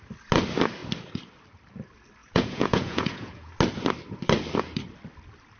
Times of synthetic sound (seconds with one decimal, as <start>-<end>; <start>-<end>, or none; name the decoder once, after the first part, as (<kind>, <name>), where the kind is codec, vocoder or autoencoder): 2.2-3.5 (vocoder, Vocos)